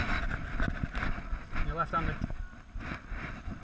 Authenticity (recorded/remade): recorded